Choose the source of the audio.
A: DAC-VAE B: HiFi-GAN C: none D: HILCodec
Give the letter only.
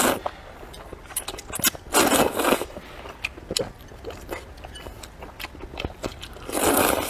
C